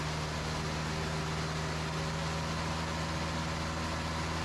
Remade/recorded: recorded